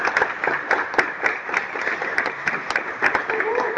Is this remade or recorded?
recorded